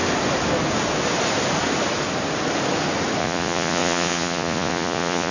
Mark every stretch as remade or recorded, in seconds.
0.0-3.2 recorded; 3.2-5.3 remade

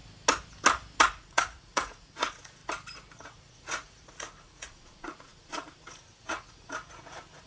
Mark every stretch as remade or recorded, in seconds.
0.0-1.0 recorded; 1.0-2.6 remade; 2.6-3.1 recorded; 3.1-7.5 remade

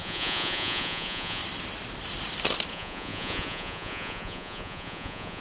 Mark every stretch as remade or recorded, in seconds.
0.0-1.4 remade; 1.4-2.7 recorded; 2.7-5.4 remade

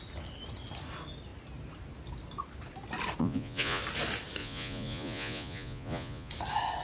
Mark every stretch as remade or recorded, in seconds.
0.0-3.2 recorded; 3.2-3.8 remade; 3.8-4.4 recorded; 4.4-6.3 remade; 6.3-6.8 recorded